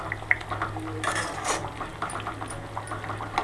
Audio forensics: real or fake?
real